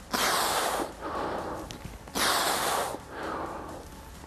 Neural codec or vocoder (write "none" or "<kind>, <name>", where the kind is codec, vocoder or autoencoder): none